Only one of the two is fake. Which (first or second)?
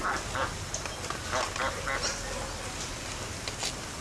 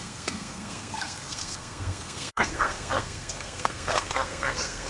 second